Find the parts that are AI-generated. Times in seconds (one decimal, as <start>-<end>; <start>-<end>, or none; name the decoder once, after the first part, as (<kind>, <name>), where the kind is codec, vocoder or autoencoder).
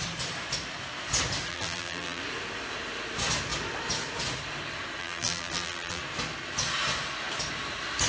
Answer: 1.5-2.2 (vocoder, BigVGAN v2); 5.0-6.0